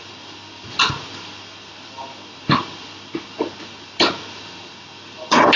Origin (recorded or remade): recorded